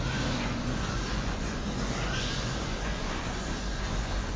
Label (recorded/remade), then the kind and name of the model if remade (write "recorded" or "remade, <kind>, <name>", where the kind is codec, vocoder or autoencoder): remade, vocoder, Vocos